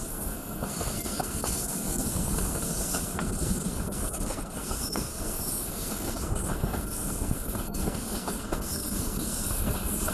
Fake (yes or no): yes